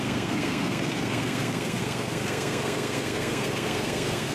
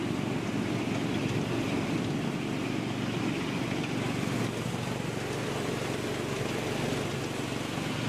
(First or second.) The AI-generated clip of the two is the first